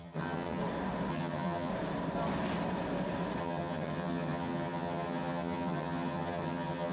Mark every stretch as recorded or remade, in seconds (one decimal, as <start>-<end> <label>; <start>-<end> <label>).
0.0-0.6 remade; 0.6-1.1 recorded; 1.1-1.7 remade; 1.7-3.4 recorded; 3.4-6.9 remade